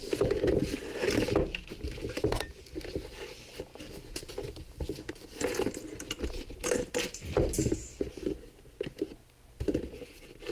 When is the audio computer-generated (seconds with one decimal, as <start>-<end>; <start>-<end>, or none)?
none